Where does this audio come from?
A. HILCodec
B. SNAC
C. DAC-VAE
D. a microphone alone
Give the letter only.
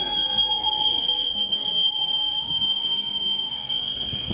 B